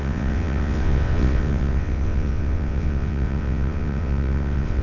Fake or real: fake